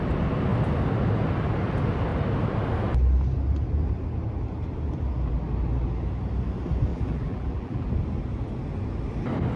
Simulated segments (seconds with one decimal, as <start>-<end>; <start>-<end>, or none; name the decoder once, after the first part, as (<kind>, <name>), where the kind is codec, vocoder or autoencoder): 6.9-7.9 (vocoder, BigVGAN v2)